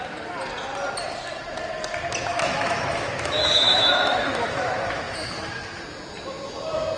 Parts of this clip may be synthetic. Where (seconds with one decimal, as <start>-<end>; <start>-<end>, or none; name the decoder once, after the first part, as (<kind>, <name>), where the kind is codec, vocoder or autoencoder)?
2.3-5.8 (autoencoder, DAC-VAE)